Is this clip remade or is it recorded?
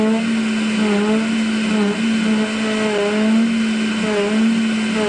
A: recorded